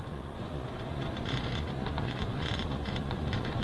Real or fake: fake